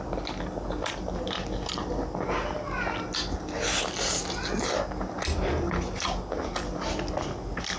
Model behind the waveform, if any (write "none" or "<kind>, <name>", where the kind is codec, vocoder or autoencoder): none